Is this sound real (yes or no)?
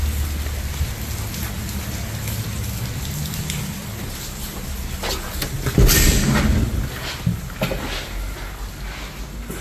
yes